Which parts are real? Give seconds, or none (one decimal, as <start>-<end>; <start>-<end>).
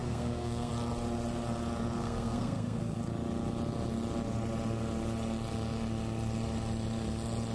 0.7-2.0; 3.0-7.5